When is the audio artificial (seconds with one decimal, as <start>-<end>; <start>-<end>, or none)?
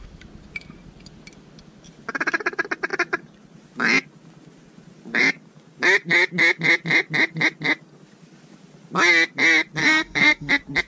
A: 9.8-10.5